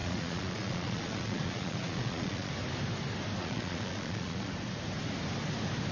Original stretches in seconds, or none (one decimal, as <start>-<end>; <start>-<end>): 2.5-3.4; 4.5-5.9